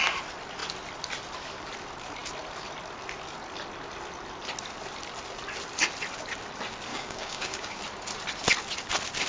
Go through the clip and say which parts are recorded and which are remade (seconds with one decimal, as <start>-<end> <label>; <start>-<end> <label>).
0.0-6.9 recorded; 6.9-7.8 remade; 7.8-9.3 recorded